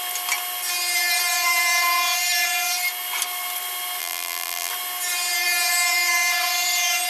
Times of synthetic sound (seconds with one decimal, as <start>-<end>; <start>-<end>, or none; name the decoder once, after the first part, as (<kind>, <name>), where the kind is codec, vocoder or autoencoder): 4.0-4.7 (vocoder, BigVGAN v2)